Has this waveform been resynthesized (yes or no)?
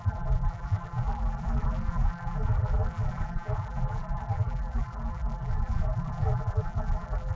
yes